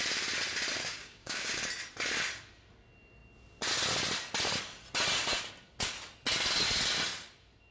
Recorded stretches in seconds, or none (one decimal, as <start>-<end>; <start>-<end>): 0.0-0.8; 1.6-7.7